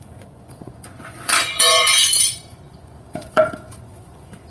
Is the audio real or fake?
fake